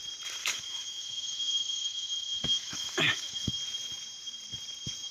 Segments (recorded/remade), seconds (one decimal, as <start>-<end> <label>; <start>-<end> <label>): 0.0-0.4 recorded; 0.4-3.5 remade; 3.5-5.1 recorded